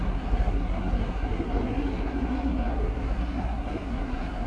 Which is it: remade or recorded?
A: remade